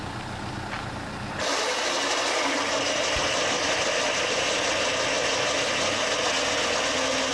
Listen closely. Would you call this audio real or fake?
real